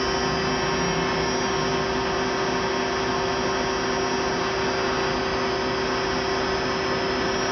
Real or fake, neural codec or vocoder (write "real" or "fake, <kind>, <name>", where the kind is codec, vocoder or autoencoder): real